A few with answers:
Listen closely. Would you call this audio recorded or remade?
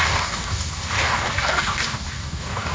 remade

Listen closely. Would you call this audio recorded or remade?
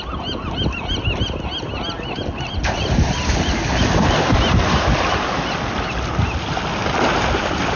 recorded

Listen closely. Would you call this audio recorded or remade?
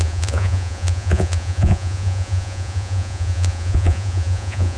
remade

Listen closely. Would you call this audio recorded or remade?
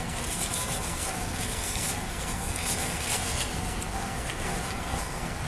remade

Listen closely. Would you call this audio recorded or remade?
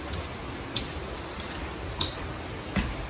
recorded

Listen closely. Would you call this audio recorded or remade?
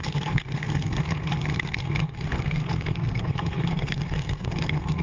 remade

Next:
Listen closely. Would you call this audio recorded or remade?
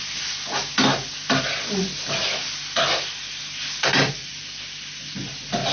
recorded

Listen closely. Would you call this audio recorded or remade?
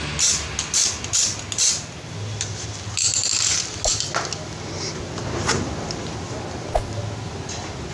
recorded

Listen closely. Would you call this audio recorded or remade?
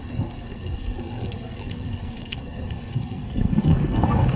remade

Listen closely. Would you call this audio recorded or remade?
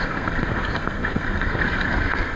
remade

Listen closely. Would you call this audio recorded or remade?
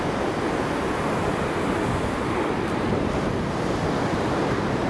recorded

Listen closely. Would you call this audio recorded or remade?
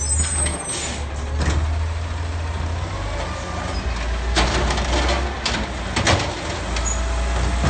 recorded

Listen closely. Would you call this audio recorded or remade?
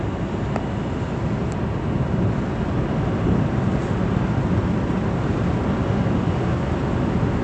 recorded